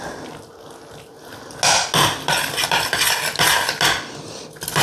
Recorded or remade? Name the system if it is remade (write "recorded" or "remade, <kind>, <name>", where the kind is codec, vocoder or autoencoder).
recorded